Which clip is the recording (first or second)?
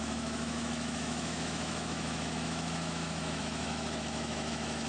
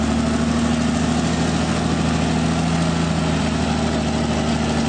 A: second